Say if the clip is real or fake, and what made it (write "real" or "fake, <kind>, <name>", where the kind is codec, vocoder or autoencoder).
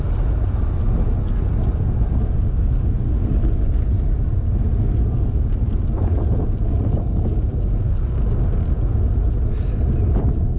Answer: real